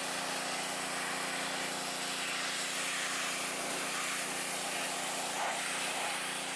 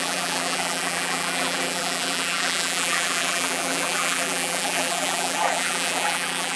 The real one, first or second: first